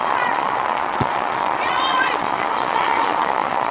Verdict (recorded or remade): remade